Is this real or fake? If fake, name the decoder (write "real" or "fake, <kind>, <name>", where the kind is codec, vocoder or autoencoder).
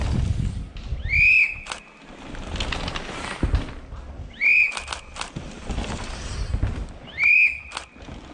real